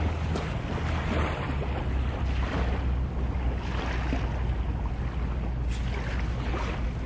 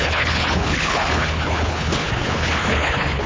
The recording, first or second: first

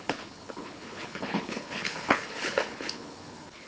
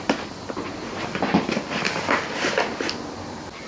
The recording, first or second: second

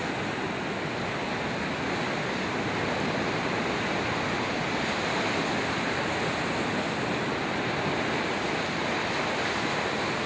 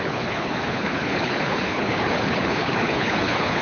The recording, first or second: first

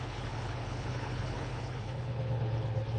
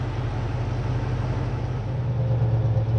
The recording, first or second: second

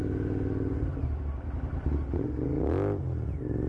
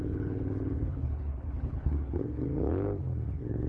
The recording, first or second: first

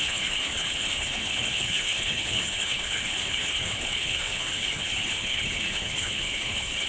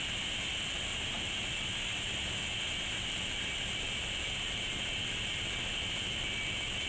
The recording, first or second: second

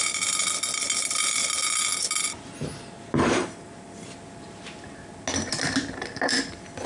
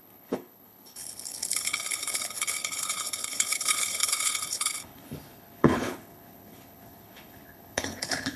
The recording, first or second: first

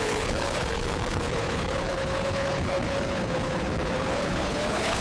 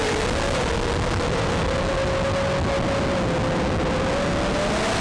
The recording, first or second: second